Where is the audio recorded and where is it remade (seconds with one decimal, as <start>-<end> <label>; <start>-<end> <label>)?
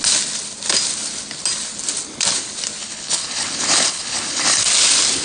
0.0-2.8 recorded; 2.8-4.6 remade; 4.6-5.2 recorded